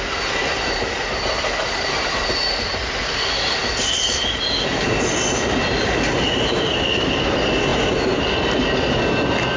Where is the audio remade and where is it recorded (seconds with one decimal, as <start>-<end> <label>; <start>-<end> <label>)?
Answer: 0.0-9.6 recorded